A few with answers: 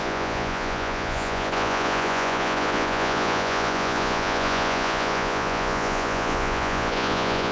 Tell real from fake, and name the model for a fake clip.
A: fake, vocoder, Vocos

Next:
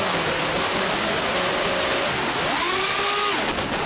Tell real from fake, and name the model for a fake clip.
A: real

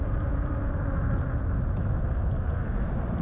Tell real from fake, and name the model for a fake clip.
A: real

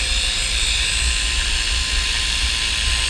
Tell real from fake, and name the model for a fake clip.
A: real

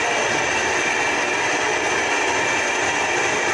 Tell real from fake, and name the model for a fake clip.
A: real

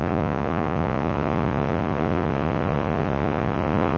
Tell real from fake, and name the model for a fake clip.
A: fake, vocoder, Vocos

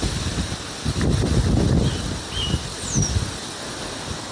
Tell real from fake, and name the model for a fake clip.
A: real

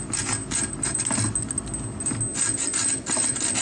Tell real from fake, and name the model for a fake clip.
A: real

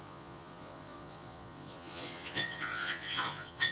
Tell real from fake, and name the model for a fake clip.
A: fake, vocoder, Vocos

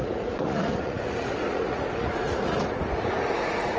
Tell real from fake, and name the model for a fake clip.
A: fake, vocoder, Vocos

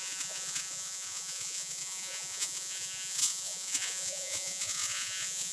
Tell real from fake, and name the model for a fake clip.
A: fake, vocoder, Vocos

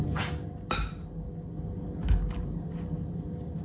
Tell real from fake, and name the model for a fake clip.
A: real